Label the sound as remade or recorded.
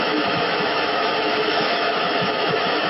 remade